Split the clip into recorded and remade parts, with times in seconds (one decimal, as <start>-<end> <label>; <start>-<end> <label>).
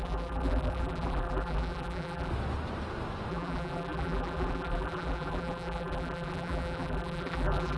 0.0-2.3 remade; 2.3-3.3 recorded; 3.3-7.8 remade